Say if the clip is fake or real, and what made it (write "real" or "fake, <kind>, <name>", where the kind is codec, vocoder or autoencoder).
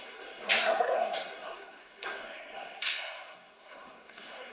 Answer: fake, codec, SNAC